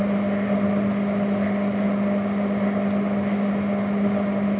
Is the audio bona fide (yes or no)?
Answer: yes